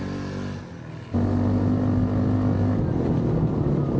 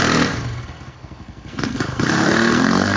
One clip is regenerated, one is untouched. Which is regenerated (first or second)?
second